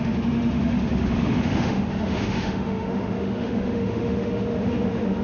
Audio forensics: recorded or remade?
remade